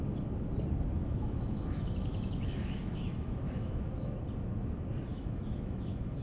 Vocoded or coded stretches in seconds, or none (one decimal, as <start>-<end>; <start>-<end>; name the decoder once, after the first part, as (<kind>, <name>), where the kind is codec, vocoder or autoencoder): 1.0-4.2 (autoencoder, DAC-VAE); 5.1-6.2